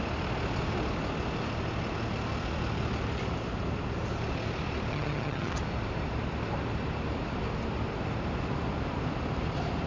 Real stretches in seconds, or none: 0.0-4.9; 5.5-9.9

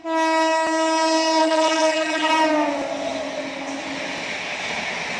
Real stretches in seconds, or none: 0.0-1.4; 2.3-5.2

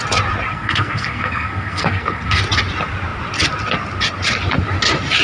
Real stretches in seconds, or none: 0.0-0.5; 2.4-5.2

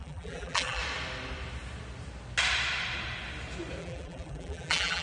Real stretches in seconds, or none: 0.8-3.8

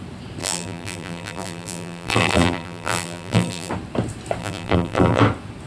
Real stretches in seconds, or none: 0.0-0.4; 3.7-4.4; 5.2-5.7

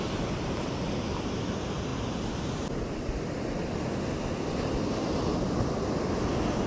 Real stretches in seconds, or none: 0.0-6.7